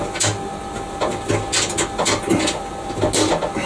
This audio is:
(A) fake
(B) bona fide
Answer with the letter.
B